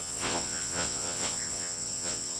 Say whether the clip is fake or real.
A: fake